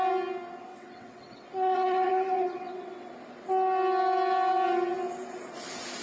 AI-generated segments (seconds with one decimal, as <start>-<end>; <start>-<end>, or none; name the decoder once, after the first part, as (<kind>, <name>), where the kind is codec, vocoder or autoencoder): 0.7-3.1 (vocoder, WaveNeXt)